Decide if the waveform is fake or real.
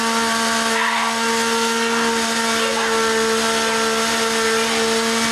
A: real